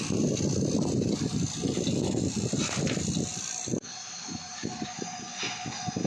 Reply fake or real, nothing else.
real